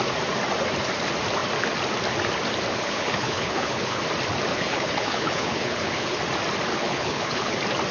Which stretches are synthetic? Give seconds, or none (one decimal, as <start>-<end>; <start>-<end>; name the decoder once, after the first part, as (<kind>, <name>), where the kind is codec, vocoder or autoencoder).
2.7-4.0 (codec, HILCodec); 4.5-6.2; 6.7-7.5